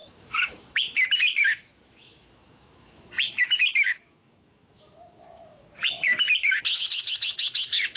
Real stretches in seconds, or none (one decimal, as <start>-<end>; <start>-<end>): none